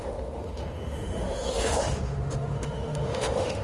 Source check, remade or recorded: remade